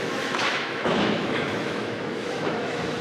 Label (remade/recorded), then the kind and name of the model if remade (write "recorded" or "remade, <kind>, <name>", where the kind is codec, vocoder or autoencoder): remade, autoencoder, DAC-VAE